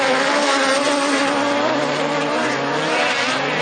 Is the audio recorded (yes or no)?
yes